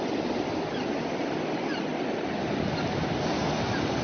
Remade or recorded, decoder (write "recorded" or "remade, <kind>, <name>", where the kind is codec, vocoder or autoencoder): recorded